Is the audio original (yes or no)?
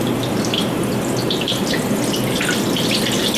yes